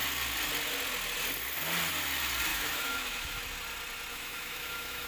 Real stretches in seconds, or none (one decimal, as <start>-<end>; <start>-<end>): 0.0-2.5; 3.4-4.1